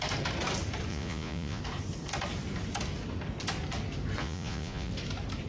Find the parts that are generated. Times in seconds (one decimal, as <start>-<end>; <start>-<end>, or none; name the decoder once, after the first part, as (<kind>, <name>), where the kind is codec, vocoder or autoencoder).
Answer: 0.9-1.6 (vocoder, Vocos); 4.2-4.9